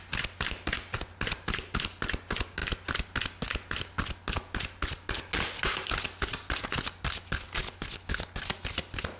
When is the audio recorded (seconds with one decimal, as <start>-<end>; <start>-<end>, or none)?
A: 0.0-9.2